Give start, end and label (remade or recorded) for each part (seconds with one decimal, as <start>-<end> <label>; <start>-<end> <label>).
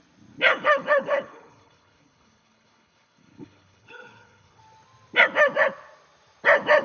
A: 0.0-0.5 recorded; 0.5-4.6 remade; 4.6-6.8 recorded